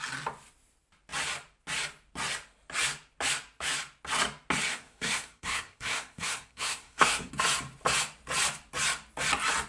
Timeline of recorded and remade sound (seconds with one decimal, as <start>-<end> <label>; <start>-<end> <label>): 0.0-4.7 recorded; 4.7-7.3 remade; 7.3-9.7 recorded